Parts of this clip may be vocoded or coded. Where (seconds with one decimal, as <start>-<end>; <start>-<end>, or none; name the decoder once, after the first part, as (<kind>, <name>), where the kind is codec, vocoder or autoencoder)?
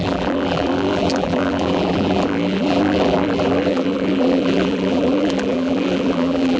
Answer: 0.0-6.6 (vocoder, BigVGAN v2)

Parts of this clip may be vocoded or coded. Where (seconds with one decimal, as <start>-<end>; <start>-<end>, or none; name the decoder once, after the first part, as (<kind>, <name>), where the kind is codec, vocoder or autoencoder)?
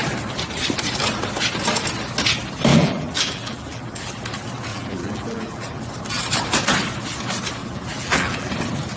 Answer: 2.7-4.2 (vocoder, BigVGAN v2); 4.7-5.8; 7.6-8.5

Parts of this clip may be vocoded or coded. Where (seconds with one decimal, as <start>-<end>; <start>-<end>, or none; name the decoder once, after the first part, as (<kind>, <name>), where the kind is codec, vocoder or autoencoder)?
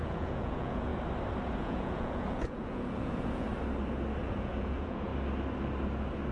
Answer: 0.0-0.9 (vocoder, Vocos); 1.6-3.5; 4.2-5.1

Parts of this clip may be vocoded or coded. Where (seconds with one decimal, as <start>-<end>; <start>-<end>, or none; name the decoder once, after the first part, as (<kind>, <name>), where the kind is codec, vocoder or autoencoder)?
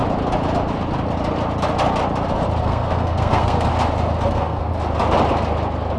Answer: 2.6-3.7 (codec, SNAC); 4.3-4.7